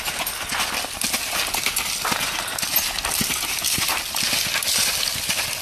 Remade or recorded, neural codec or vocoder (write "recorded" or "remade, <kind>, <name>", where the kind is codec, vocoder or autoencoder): recorded